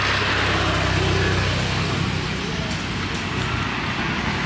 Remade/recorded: recorded